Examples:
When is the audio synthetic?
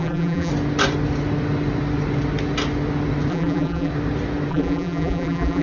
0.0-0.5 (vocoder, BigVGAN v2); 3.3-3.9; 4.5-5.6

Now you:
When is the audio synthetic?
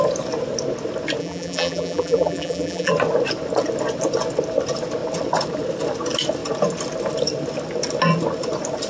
1.2-2.9 (vocoder, BigVGAN v2)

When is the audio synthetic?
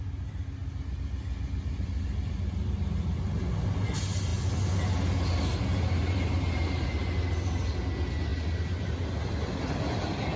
none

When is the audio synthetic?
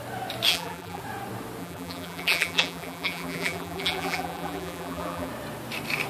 0.5-1.0 (vocoder, BigVGAN v2); 1.6-5.3